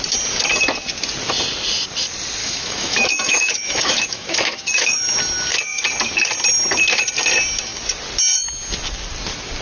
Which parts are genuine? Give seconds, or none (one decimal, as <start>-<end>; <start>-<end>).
0.0-2.4; 5.2-9.6